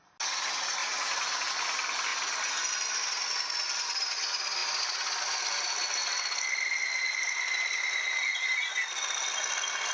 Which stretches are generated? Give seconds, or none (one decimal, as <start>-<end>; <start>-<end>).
0.8-1.5